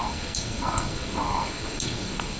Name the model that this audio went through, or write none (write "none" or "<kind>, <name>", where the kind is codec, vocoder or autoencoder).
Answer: codec, SNAC